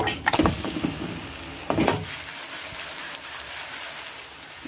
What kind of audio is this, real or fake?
real